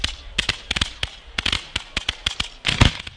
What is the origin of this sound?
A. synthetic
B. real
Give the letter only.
B